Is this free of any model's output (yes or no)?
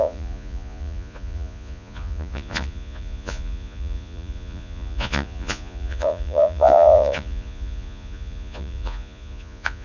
no